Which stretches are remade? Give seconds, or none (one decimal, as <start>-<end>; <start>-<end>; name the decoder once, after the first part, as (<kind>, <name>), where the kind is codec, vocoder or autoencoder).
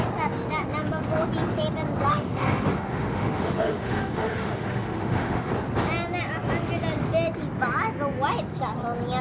2.1-5.5 (autoencoder, DAC-VAE)